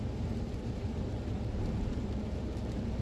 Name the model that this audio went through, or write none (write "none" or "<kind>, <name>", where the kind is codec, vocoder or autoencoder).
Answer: vocoder, BigVGAN v2